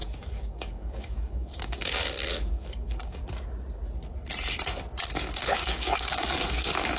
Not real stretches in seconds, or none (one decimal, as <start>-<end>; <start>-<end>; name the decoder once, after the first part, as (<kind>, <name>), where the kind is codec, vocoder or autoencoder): 0.0-3.2 (codec, DAC); 5.1-7.0